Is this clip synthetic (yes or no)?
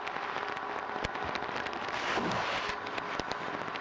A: no